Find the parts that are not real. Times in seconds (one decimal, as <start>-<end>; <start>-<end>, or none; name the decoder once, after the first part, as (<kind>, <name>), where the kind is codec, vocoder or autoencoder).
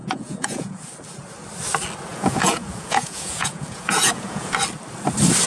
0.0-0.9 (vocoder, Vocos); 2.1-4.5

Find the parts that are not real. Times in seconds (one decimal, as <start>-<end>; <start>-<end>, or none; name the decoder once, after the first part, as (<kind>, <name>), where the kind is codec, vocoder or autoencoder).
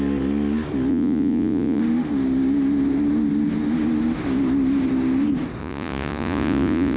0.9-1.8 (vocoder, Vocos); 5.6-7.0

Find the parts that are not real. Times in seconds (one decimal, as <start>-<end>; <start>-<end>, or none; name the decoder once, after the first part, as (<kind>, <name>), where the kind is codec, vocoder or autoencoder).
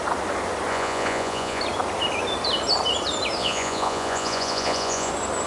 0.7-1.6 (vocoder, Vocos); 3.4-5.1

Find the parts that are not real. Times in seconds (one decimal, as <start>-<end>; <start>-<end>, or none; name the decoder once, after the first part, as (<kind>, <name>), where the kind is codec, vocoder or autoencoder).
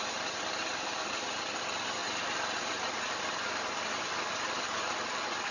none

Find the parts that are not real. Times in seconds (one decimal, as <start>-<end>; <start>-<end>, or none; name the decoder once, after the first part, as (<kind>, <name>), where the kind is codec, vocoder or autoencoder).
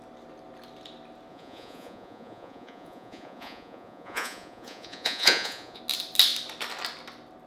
1.3-5.8 (vocoder, Vocos)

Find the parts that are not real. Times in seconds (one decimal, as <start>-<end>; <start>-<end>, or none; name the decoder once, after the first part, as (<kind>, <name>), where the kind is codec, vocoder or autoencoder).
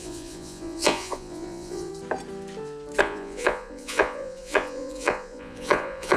0.0-1.9 (vocoder, Vocos); 3.0-6.2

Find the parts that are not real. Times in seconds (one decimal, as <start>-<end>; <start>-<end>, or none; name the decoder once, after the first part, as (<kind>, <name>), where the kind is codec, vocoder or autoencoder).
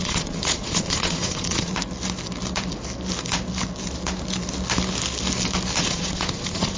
0.0-1.7 (vocoder, Vocos); 5.8-6.8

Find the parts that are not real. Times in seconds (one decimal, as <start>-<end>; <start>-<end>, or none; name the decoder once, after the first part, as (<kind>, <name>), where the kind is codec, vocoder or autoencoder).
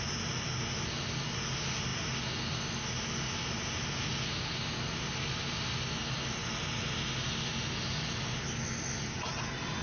none